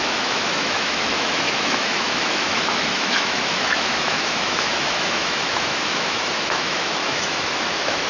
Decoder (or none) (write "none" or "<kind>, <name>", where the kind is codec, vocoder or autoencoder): autoencoder, DAC-VAE